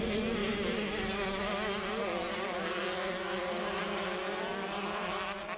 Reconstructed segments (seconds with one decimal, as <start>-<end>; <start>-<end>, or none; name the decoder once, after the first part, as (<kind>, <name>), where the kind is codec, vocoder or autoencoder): none